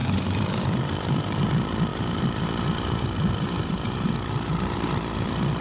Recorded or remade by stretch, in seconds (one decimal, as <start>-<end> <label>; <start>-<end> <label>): 0.0-1.5 remade; 1.5-1.9 recorded; 1.9-5.6 remade